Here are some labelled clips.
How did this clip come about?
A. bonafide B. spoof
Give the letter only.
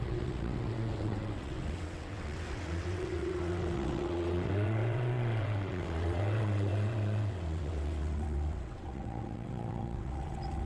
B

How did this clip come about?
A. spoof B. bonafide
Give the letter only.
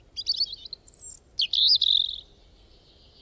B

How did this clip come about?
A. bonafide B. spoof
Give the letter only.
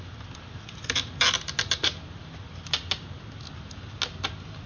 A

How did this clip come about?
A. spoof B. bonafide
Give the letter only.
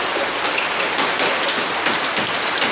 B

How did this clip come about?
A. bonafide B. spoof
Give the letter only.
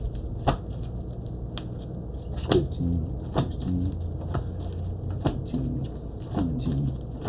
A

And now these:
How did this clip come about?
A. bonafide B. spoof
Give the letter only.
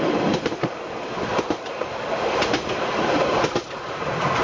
A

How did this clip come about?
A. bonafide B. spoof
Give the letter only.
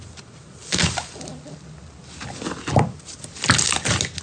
A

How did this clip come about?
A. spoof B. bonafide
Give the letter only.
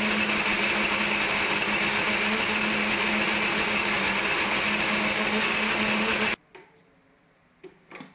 B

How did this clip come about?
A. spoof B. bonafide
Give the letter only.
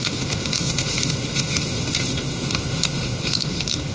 A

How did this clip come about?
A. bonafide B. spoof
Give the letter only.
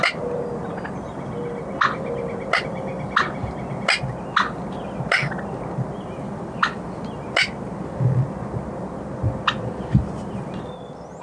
A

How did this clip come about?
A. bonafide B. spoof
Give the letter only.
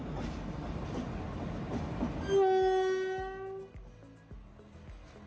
A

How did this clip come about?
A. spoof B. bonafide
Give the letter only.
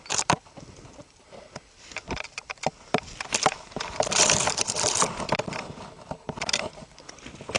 A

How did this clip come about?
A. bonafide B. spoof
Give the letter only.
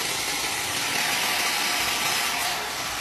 A